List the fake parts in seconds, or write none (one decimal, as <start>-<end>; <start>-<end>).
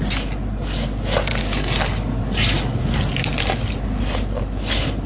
none